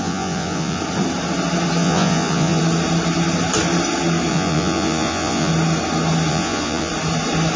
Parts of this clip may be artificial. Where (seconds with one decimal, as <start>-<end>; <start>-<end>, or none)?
0.0-0.8; 1.8-2.6; 4.3-5.5; 6.3-6.9